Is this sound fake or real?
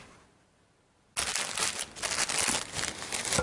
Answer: real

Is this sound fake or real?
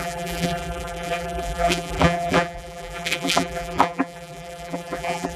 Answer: fake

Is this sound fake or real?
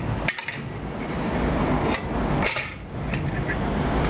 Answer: real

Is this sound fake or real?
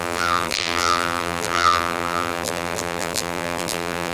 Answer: fake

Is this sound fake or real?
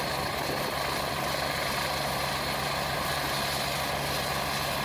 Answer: real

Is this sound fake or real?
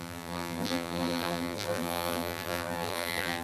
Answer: fake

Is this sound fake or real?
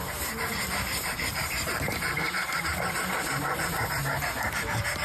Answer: fake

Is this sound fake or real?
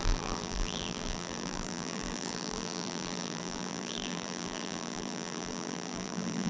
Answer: fake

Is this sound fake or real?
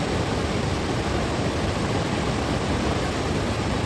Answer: fake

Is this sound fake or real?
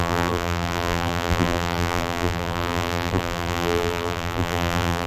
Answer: fake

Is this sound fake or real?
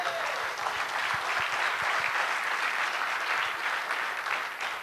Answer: real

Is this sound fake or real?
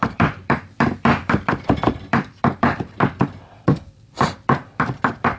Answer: fake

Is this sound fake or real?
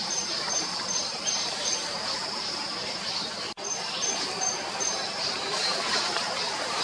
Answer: fake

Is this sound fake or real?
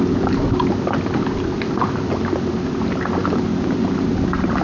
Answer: real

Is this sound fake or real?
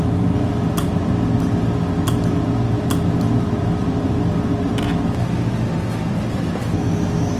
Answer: real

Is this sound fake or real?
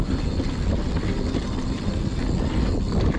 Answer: real